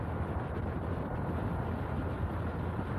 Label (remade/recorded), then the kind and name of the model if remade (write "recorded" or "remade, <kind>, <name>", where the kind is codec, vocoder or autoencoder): recorded